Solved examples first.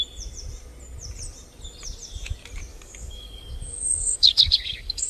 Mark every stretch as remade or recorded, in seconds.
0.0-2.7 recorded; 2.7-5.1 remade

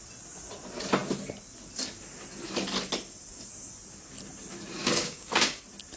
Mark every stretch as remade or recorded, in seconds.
0.0-4.8 recorded; 4.8-5.6 remade; 5.6-6.0 recorded

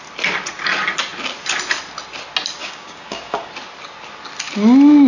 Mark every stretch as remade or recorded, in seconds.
0.0-2.6 recorded; 2.6-3.5 remade; 3.5-5.1 recorded

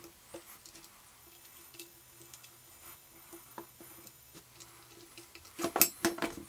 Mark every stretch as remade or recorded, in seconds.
0.0-1.2 recorded; 1.2-4.4 remade; 4.4-6.5 recorded

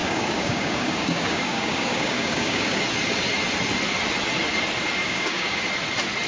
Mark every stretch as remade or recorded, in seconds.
0.0-2.8 remade; 2.8-5.0 recorded; 5.0-5.6 remade; 5.6-6.3 recorded

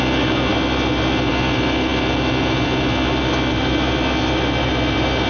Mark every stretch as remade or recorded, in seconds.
0.0-5.3 recorded